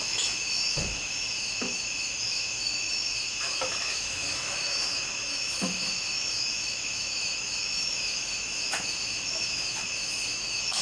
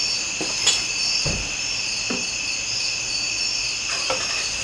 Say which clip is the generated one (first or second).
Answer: first